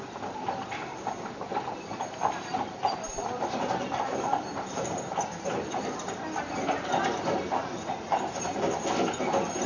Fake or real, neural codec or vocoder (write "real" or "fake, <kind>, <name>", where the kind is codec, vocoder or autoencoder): fake, vocoder, BigVGAN v2